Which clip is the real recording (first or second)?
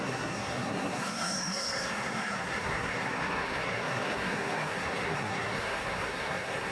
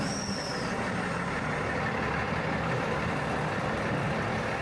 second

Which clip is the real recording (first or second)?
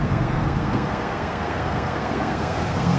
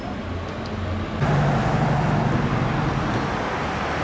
second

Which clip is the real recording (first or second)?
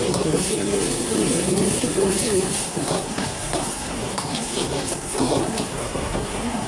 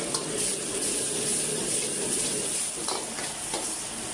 second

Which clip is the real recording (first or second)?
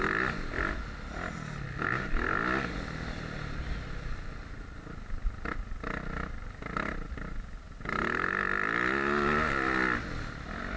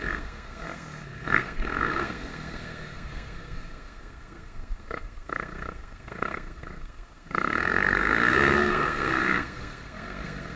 first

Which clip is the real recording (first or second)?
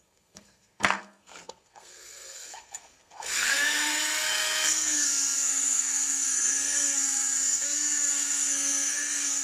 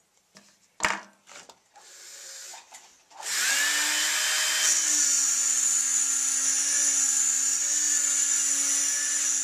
second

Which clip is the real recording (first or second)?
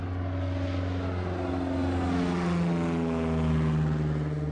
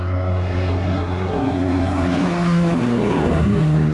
first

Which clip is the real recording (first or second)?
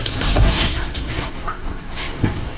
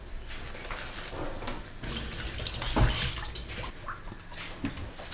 second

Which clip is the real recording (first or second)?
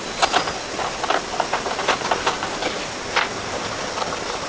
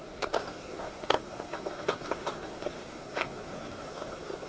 first